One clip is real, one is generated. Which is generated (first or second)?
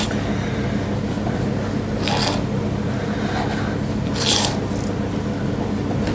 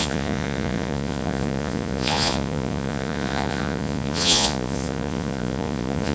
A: second